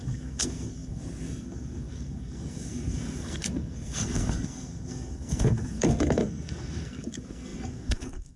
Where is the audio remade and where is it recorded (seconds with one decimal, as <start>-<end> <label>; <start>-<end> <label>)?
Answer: 0.0-8.4 remade